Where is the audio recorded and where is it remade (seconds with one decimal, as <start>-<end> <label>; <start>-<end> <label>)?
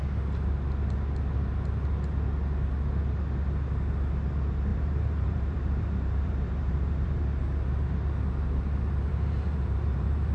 0.0-4.7 recorded; 4.7-7.2 remade; 7.2-9.1 recorded; 9.1-10.3 remade